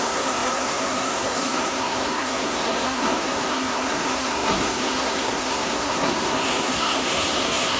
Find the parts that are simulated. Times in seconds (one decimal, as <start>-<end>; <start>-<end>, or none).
0.0-7.8